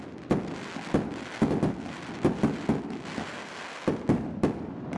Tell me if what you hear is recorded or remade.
recorded